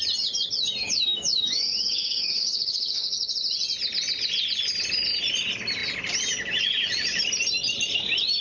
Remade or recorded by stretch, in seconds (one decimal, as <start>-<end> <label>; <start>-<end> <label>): 0.0-0.8 recorded; 0.8-3.3 remade; 3.3-8.4 recorded